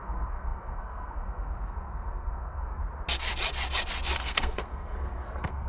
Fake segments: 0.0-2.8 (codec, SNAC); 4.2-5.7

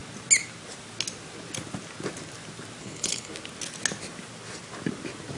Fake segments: 2.8-3.3 (codec, HILCodec)

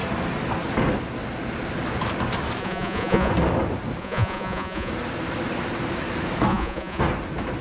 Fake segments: 2.6-3.3 (vocoder, Vocos); 4.0-4.9; 6.5-7.0